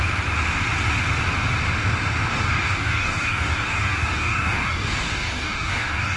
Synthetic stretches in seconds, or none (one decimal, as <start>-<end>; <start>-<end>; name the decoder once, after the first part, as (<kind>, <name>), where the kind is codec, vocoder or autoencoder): 2.3-6.2 (codec, DAC)